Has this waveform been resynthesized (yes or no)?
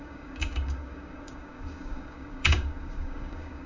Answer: yes